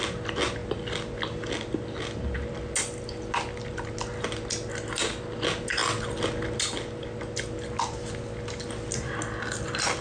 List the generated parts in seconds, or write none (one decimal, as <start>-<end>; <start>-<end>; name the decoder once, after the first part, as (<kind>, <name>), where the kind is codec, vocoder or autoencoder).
none